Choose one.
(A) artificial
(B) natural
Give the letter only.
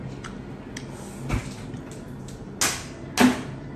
B